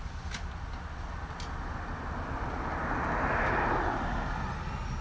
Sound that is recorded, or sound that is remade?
recorded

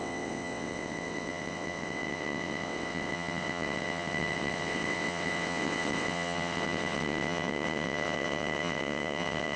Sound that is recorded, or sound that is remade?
remade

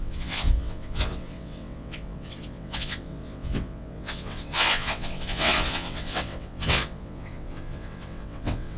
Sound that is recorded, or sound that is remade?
remade